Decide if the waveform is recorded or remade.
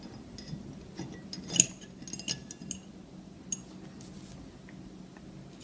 recorded